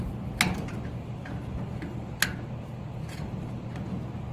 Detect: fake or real real